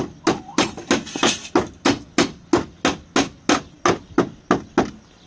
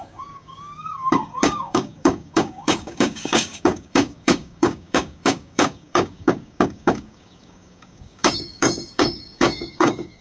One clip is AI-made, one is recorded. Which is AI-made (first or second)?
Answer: second